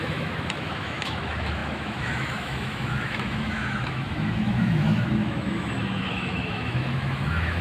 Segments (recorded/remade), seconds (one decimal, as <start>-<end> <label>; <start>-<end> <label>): 0.0-7.6 remade